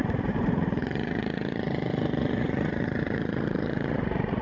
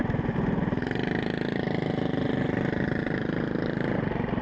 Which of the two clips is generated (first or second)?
first